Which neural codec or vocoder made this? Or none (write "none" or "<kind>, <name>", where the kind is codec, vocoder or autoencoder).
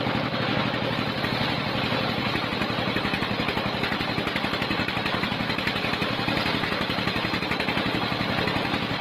none